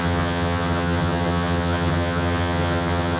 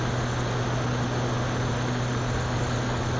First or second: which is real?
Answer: second